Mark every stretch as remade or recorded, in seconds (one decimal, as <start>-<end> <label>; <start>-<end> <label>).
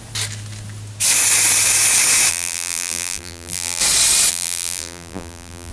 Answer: 0.0-2.3 recorded; 2.3-3.8 remade; 3.8-4.3 recorded; 4.3-5.7 remade